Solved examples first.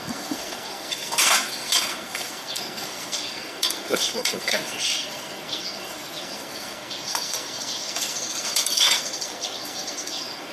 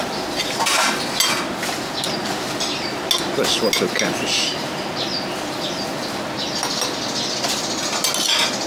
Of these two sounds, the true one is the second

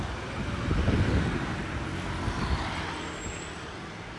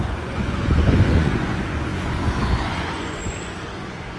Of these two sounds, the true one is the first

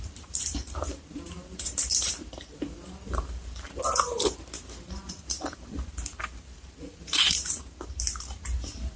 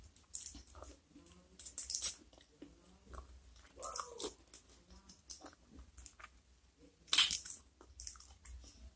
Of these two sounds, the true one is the second